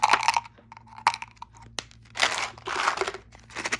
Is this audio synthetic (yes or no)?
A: no